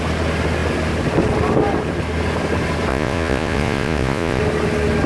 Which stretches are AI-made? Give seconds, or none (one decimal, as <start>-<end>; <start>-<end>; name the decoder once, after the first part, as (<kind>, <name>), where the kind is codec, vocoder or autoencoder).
2.9-4.4 (vocoder, Vocos)